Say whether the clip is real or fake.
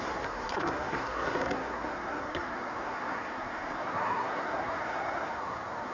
fake